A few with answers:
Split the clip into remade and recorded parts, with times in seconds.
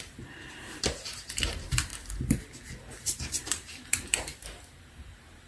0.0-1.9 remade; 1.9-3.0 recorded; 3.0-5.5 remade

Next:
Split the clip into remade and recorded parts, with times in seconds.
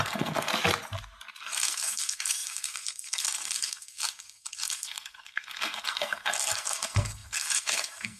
0.0-0.5 remade; 0.5-1.4 recorded; 1.4-8.2 remade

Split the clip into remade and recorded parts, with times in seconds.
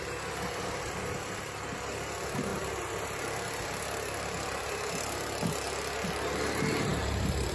0.0-6.9 recorded; 6.9-7.5 remade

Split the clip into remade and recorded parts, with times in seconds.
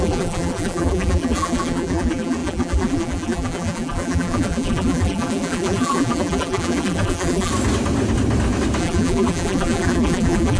0.0-7.5 remade; 7.5-8.8 recorded; 8.8-10.6 remade